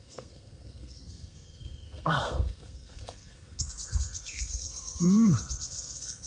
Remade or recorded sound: remade